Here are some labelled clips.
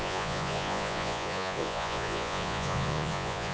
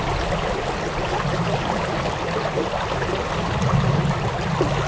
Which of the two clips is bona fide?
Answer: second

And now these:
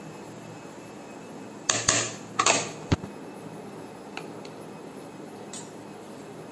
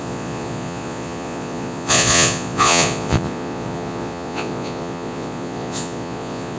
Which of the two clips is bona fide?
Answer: first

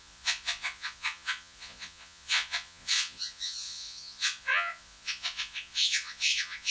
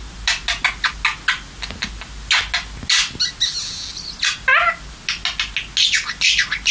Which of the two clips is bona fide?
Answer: second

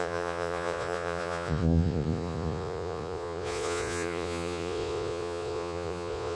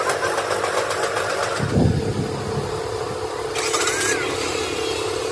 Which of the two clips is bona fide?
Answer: second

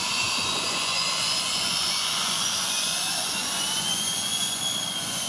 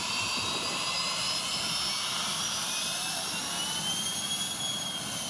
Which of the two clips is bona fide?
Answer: second